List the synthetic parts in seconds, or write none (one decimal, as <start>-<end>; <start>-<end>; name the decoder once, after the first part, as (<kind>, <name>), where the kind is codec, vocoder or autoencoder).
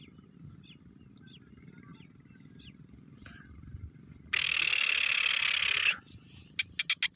none